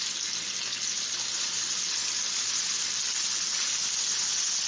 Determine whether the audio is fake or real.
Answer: real